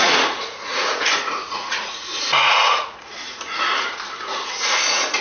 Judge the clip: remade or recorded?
remade